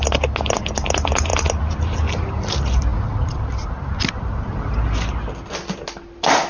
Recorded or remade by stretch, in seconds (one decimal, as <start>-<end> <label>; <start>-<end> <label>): 0.0-6.5 recorded